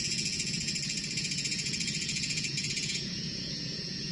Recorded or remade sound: remade